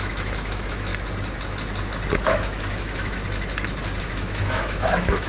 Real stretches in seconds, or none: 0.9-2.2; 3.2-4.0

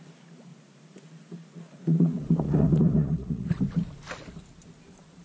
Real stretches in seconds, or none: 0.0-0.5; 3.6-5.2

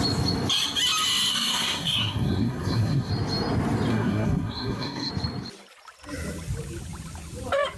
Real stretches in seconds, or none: 0.0-1.3; 3.1-3.9; 5.1-7.8

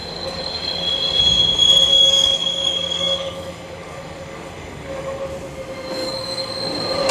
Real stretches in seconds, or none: 1.2-1.9; 5.2-6.0; 6.5-7.1

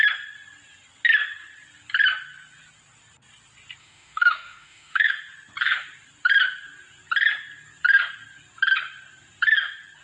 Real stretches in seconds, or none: 0.0-3.8; 5.1-10.0

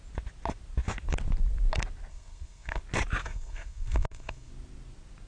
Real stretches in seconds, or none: 0.0-2.1; 2.8-3.2; 4.5-5.3

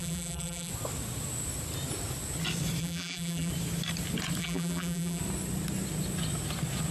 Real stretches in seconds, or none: 0.7-2.8; 3.5-4.4; 5.2-6.9

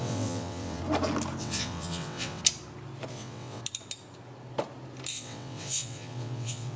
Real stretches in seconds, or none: 0.8-1.4; 2.4-3.1; 3.6-5.1